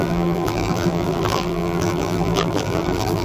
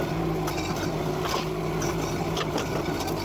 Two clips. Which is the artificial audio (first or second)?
first